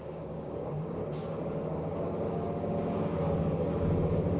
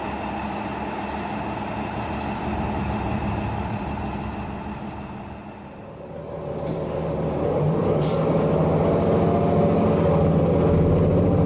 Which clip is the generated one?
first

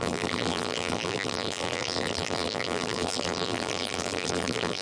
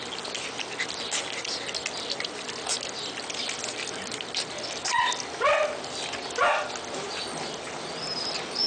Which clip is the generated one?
first